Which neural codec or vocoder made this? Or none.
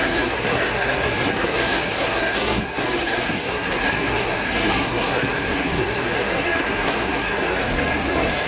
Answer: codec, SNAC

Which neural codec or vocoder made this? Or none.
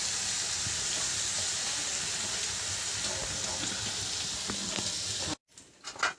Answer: none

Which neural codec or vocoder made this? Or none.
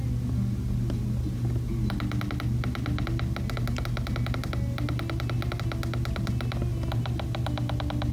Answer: none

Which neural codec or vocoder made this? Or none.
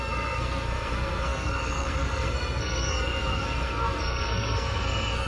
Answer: codec, SNAC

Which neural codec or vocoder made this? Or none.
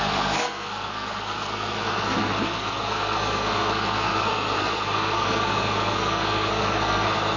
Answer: codec, SNAC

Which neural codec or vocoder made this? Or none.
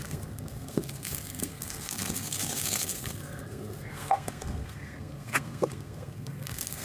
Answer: codec, SNAC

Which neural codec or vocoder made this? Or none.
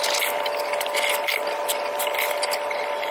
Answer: none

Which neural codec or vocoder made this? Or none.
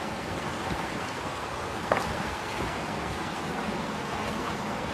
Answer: codec, SNAC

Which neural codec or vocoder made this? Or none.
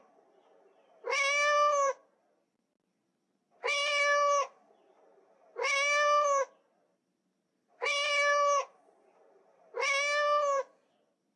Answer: none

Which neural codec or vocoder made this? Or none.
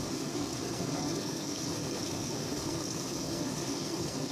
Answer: codec, SNAC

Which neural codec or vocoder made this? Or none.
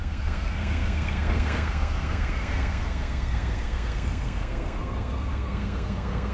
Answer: codec, SNAC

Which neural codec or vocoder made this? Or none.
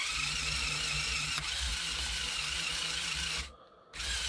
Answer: none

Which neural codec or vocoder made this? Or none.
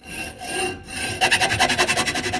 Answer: none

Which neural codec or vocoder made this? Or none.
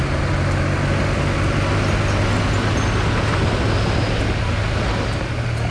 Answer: none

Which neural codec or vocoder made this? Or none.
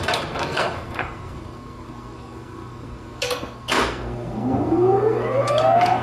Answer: codec, SNAC